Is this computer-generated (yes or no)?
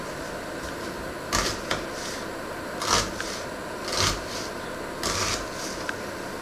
no